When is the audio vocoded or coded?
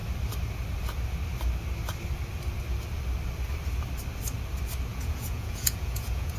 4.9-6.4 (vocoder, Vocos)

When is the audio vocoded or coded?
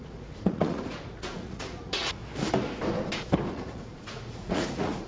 0.0-2.2 (vocoder, Vocos); 3.5-5.1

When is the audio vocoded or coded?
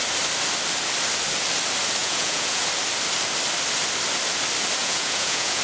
2.0-2.6 (vocoder, Vocos); 4.8-5.6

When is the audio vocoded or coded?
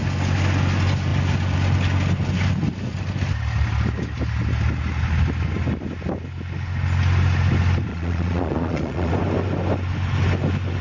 7.9-9.1 (vocoder, Vocos)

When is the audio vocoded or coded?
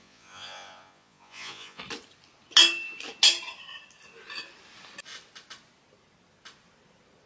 0.0-1.8 (vocoder, Vocos)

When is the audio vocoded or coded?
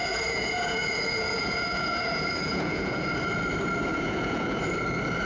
0.0-3.0 (vocoder, Vocos); 3.9-4.6